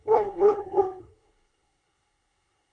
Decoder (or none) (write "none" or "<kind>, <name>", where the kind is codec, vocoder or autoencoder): codec, SNAC